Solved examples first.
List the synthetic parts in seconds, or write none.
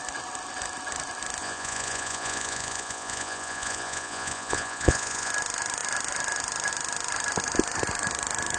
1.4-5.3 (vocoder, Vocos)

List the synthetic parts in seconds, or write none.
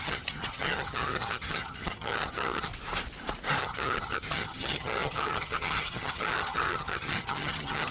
0.0-2.7 (vocoder, HiFi-GAN); 3.6-7.9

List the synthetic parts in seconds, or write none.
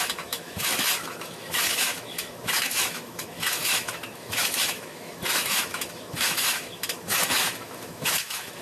0.0-8.6 (autoencoder, DAC-VAE)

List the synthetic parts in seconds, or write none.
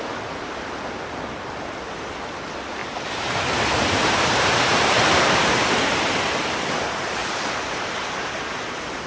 2.8-6.1 (vocoder, BigVGAN v2); 7.2-7.8